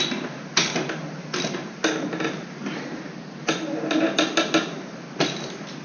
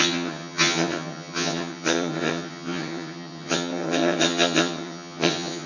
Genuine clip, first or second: first